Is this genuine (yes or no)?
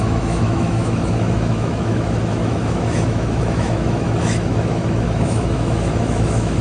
no